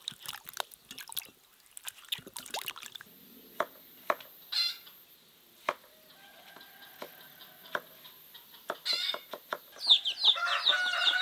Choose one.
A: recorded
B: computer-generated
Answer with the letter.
A